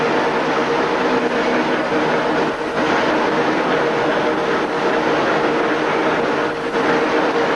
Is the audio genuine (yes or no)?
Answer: yes